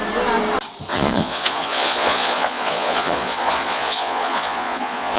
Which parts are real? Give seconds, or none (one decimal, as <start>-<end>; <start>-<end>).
0.0-0.9